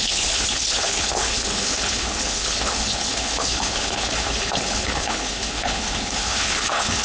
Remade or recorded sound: remade